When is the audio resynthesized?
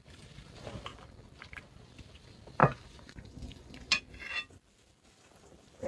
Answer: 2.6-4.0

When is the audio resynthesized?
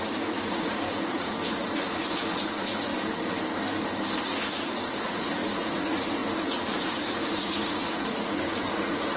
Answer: 0.0-2.9; 4.2-9.2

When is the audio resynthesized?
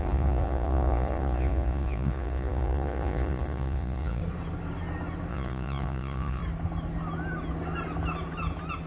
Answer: 0.0-4.2; 5.3-6.4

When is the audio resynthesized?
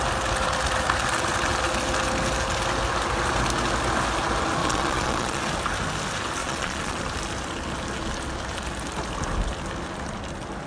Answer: 4.6-5.4; 6.4-7.0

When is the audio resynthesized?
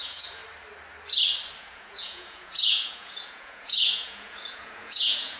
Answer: 0.0-0.4; 1.6-5.4